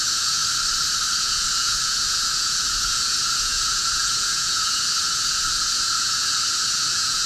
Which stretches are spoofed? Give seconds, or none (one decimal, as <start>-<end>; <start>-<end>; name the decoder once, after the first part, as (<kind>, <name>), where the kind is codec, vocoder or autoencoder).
0.0-0.4 (vocoder, Vocos); 1.2-7.3